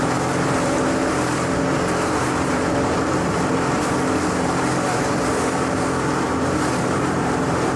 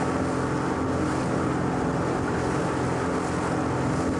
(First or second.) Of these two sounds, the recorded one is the second